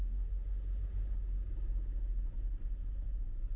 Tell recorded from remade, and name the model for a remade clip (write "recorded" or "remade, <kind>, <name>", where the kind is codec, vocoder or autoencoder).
recorded